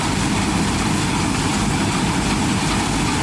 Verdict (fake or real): real